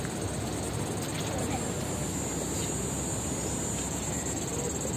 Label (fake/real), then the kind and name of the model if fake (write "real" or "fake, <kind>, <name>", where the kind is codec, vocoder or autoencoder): real